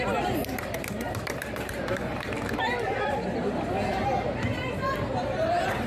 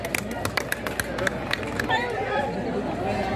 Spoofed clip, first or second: first